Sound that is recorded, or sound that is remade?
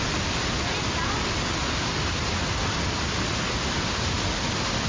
recorded